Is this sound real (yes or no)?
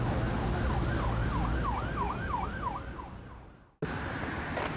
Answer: yes